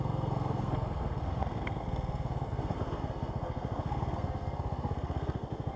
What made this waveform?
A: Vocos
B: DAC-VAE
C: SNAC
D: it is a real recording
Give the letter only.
C